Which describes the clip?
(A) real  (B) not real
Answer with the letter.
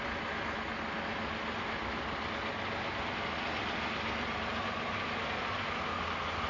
A